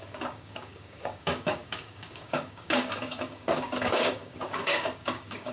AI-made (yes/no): yes